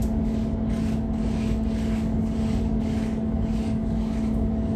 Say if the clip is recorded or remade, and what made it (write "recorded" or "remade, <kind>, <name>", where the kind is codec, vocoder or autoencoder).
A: remade, codec, DAC